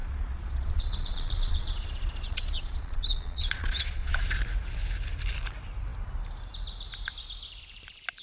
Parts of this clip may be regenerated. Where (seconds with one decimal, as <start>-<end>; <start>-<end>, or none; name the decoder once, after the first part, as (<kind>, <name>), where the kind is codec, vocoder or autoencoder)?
0.0-4.2 (vocoder, Vocos)